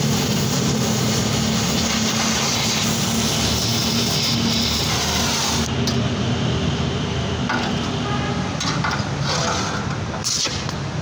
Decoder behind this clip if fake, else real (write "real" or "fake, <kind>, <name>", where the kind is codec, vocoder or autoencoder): real